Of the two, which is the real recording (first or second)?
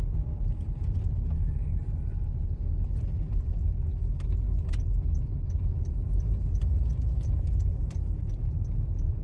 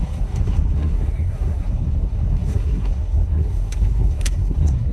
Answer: first